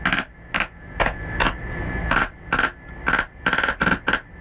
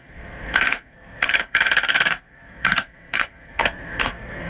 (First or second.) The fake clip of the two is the second